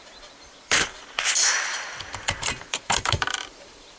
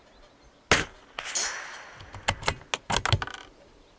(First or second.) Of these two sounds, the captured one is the second